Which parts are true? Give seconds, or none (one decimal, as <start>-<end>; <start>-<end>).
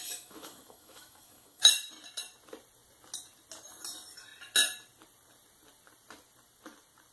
1.7-7.1